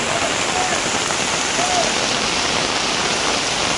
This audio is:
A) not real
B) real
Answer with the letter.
B